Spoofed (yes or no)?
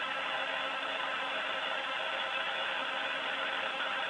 no